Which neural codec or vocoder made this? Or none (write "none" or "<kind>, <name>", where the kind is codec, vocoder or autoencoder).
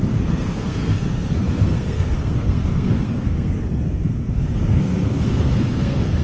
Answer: codec, SNAC